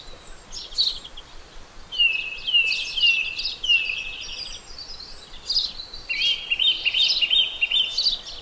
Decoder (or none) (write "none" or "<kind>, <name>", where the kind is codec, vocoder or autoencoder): none